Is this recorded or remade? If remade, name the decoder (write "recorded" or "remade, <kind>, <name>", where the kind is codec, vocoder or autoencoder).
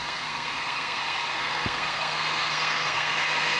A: remade, codec, SNAC